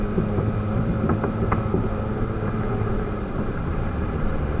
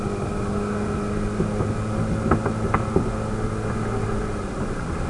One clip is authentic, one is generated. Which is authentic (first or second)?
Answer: second